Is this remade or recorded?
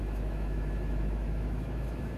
remade